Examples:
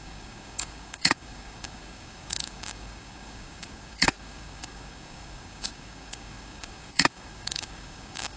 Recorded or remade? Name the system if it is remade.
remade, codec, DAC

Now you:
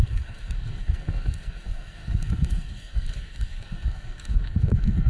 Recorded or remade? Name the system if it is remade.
remade, codec, SNAC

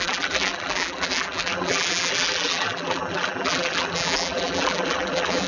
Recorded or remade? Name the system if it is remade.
remade, vocoder, BigVGAN v2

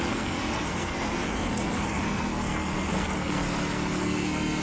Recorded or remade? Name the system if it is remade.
remade, codec, SNAC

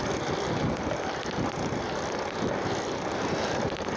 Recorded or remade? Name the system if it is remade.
recorded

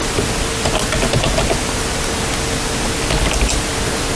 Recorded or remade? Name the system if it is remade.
recorded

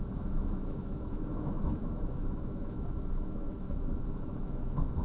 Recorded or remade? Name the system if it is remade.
remade, autoencoder, DAC-VAE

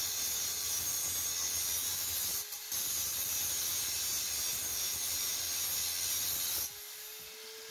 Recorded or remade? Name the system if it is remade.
recorded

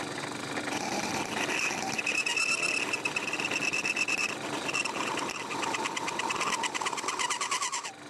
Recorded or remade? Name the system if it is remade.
recorded